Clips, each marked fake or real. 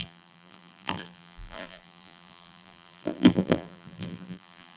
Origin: fake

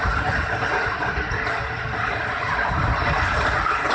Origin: real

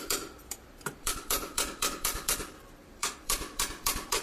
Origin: fake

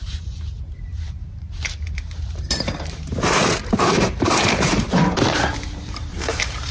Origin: fake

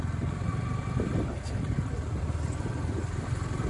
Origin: real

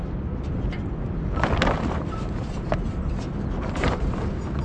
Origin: real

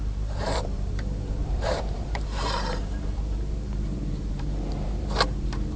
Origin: fake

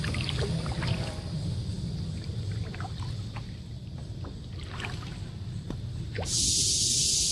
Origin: real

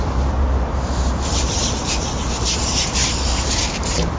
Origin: fake